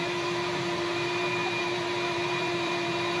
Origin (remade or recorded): remade